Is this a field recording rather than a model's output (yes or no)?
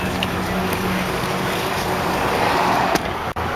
no